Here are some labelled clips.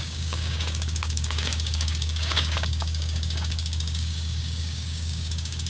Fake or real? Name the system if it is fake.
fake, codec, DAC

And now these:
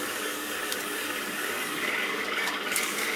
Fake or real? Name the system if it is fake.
fake, codec, DAC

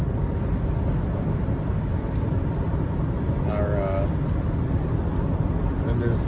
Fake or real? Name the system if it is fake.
real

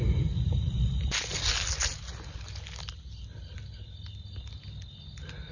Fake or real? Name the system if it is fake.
real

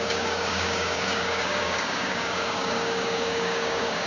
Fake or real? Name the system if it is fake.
fake, codec, DAC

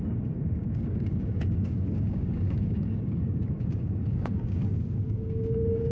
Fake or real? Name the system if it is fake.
fake, codec, DAC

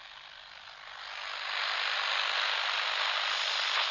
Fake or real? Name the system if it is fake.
real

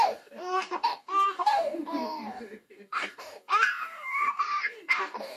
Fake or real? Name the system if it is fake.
fake, codec, DAC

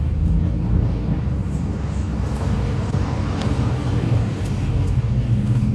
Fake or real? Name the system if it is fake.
fake, codec, DAC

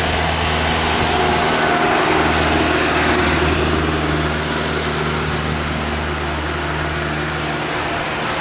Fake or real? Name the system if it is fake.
real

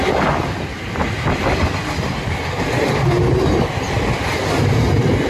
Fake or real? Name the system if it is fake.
real